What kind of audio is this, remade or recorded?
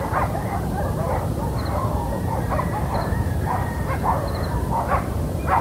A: remade